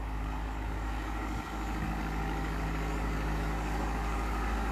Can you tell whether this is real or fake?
fake